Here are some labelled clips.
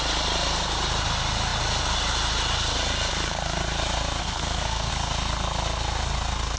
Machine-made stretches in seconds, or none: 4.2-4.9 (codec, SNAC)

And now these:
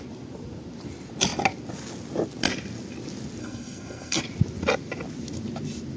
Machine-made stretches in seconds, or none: 3.4-4.2 (codec, SNAC)

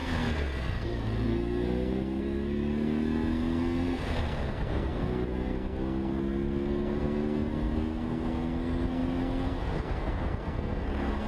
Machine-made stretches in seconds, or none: 0.0-11.3 (codec, SNAC)